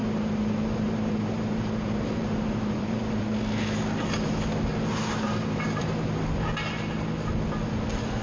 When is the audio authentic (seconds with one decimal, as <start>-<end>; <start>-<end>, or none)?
3.2-4.7; 5.9-8.2